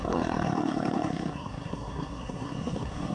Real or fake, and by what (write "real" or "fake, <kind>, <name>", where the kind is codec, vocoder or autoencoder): fake, codec, SNAC